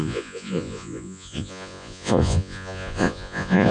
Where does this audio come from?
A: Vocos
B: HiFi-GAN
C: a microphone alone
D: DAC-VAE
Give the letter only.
A